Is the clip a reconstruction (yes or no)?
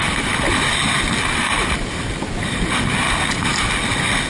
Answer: no